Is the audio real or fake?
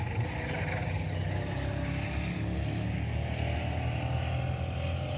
real